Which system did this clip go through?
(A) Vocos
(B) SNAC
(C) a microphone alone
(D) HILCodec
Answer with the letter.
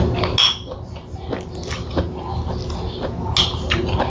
C